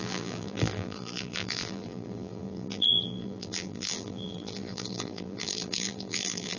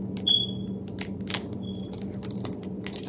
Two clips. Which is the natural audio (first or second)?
second